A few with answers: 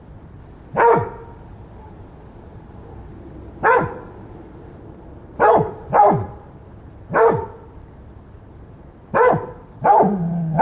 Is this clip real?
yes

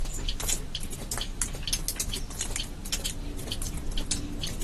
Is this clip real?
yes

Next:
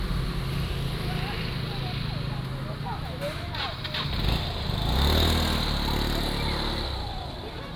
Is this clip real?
yes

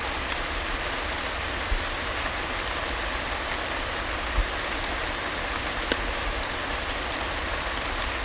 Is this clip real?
yes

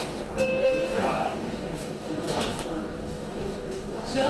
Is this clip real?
no